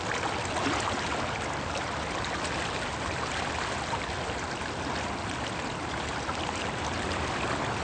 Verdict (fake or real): real